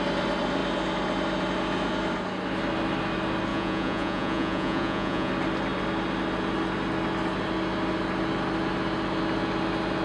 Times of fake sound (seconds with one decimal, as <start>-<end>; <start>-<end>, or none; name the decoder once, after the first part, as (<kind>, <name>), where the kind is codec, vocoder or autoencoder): 3.5-5.3 (vocoder, Vocos)